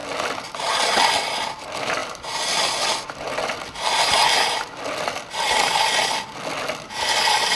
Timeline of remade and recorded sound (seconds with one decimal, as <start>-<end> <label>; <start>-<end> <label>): 0.0-7.5 recorded